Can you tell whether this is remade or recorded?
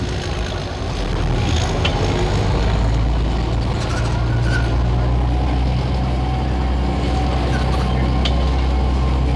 recorded